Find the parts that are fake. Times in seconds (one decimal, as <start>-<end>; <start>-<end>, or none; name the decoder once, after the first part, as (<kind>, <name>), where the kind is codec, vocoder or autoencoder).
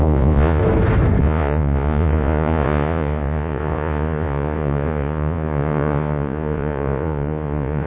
0.0-0.6 (vocoder, Vocos); 1.2-7.9